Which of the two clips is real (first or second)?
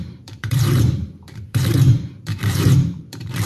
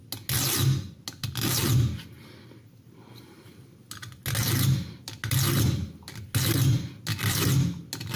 second